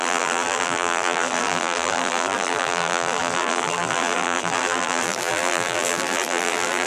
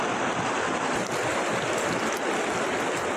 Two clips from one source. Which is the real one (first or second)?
second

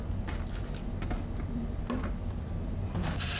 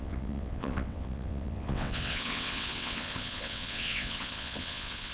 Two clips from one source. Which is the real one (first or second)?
first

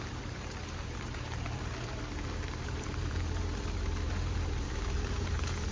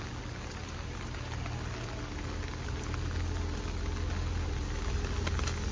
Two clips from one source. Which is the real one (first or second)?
second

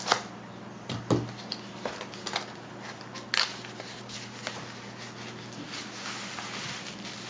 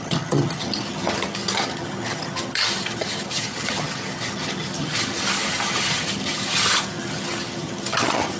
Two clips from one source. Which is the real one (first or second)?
first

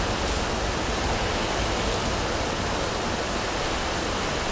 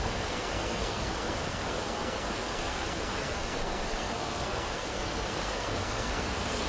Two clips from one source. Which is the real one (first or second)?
first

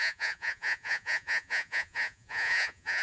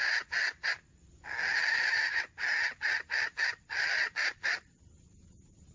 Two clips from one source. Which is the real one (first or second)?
second